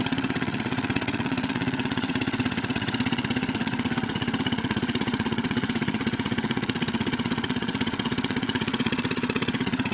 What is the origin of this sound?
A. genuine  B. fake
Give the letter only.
B